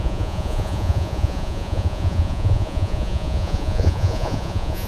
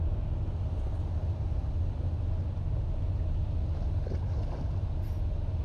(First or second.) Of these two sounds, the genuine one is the second